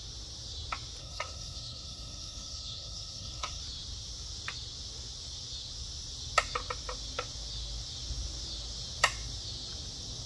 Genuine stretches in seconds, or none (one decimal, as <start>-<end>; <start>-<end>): 0.0-1.0; 3.6-10.3